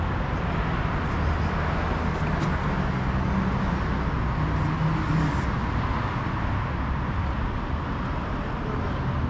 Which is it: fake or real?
real